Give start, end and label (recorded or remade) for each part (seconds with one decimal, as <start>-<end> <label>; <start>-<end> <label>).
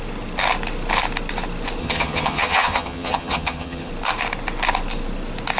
0.0-1.8 recorded; 1.8-3.9 remade; 3.9-5.6 recorded